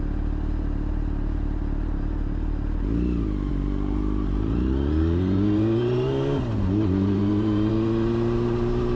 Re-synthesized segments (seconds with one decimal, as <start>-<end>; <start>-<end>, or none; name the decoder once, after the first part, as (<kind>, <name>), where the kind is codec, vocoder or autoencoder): 3.5-7.7 (vocoder, BigVGAN v2)